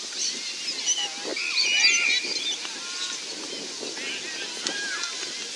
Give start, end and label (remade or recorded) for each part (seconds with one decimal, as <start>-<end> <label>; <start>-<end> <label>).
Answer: 0.0-5.6 recorded